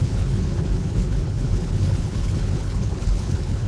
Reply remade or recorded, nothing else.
remade